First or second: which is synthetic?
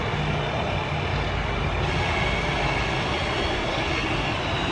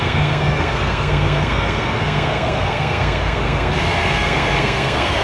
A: second